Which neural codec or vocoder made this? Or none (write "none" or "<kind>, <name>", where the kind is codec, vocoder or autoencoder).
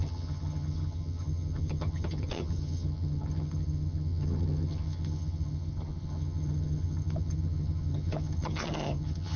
vocoder, HiFi-GAN